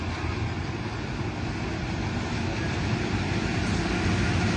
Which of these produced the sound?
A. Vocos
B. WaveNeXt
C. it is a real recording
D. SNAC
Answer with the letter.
C